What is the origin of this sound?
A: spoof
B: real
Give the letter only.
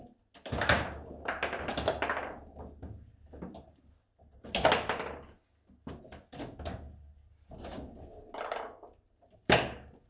B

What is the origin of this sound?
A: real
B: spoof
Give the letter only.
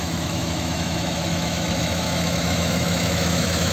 B